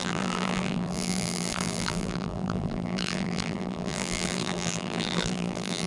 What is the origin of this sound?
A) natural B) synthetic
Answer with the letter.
B